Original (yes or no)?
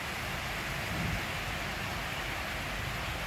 yes